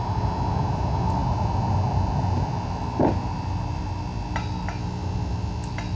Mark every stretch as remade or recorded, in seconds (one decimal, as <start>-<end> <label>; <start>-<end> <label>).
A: 0.0-6.0 recorded